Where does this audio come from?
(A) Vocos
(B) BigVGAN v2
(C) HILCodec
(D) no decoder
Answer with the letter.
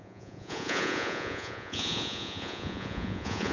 A